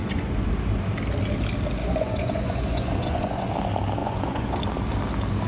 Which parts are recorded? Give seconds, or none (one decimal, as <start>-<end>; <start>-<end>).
0.5-1.8; 3.5-4.0; 4.6-5.5

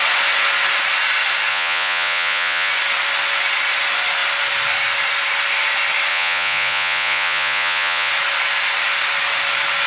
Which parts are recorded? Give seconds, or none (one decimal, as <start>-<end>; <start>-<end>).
0.0-1.5; 2.7-6.1; 8.1-9.9

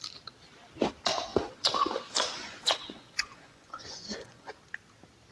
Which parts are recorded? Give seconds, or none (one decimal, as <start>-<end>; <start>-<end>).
0.0-1.3; 4.5-5.3

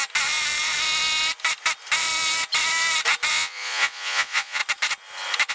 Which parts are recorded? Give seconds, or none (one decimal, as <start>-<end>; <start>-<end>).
0.0-3.3; 4.6-5.5

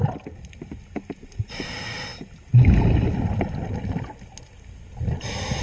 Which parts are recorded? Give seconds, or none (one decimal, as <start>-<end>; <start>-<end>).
0.0-5.6

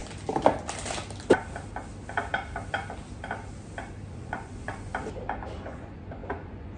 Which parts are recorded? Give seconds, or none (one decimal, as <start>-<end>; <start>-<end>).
0.0-4.1; 4.9-5.6